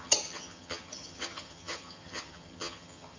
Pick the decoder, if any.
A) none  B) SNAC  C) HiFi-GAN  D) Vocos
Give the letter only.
C